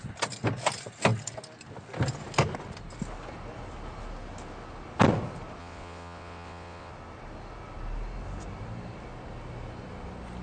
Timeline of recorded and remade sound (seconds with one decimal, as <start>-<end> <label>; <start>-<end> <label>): 0.0-5.6 recorded; 5.6-6.9 remade; 6.9-10.4 recorded